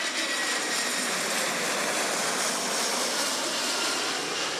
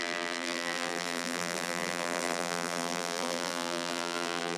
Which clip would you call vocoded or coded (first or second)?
second